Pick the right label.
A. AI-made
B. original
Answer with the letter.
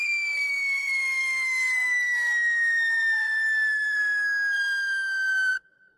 A